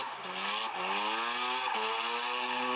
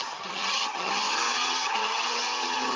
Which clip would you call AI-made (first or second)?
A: second